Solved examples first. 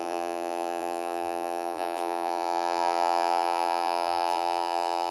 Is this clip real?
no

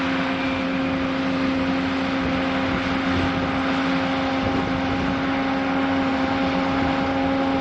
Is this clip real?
yes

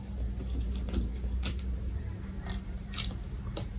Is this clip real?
no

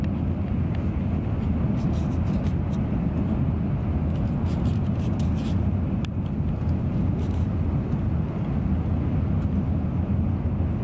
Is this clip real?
yes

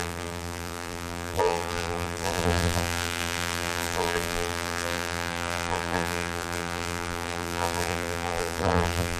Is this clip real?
no